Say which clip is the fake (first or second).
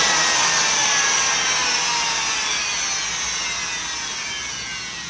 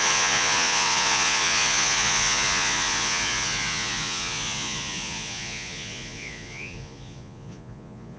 second